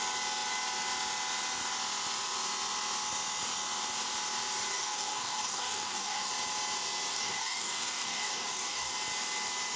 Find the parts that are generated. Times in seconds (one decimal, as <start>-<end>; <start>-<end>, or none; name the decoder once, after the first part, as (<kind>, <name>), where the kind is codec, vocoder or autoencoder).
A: 4.7-6.3 (codec, DAC); 7.1-8.9